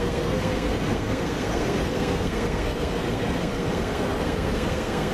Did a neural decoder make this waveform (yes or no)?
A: yes